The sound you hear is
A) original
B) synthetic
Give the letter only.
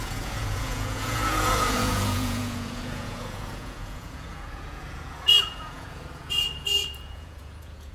B